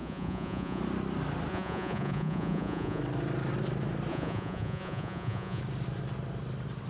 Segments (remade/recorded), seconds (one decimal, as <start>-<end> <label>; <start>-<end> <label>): 0.0-0.8 remade; 0.8-1.5 recorded; 1.5-3.0 remade; 3.0-4.1 recorded; 4.1-5.6 remade; 5.6-6.9 recorded

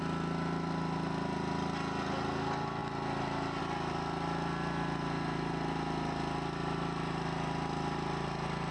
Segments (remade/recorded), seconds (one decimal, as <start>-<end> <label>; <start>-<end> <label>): 0.0-8.7 recorded